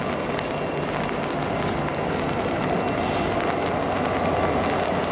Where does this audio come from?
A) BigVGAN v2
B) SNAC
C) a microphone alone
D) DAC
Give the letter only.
C